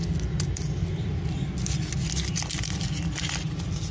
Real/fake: real